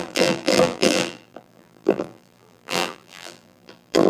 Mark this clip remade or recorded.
remade